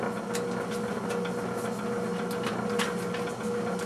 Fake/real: real